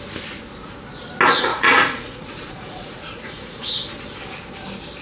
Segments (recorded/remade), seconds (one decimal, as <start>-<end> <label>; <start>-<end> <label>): 0.0-1.5 recorded; 1.5-3.6 remade; 3.6-5.0 recorded